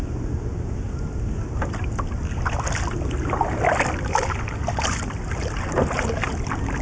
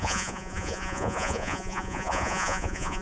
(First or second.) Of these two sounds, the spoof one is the second